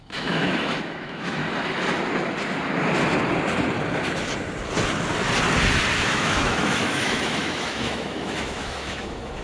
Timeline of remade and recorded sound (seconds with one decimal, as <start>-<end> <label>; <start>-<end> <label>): 0.0-1.4 remade; 1.4-6.0 recorded; 6.0-9.4 remade